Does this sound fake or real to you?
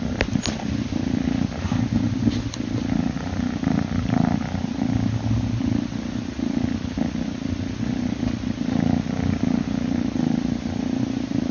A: real